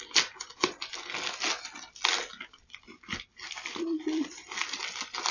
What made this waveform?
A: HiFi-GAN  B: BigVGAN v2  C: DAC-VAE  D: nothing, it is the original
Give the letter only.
D